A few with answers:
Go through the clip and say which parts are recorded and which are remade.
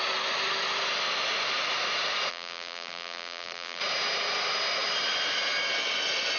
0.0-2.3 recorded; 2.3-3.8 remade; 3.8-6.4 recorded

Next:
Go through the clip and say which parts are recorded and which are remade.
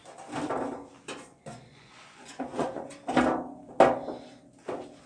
0.0-1.3 recorded; 1.3-2.9 remade; 2.9-5.1 recorded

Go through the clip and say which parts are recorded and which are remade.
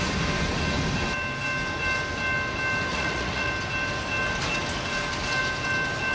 0.0-2.9 recorded; 2.9-3.5 remade; 3.5-6.1 recorded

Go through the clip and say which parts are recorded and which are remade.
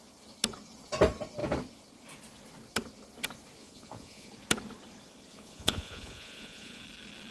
0.0-3.6 recorded; 3.6-4.3 remade; 4.3-5.3 recorded; 5.3-6.8 remade; 6.8-7.3 recorded